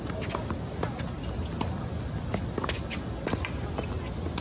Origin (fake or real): real